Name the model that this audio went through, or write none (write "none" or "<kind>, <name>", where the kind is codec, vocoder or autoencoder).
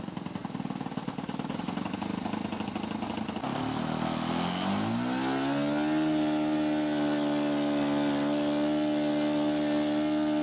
none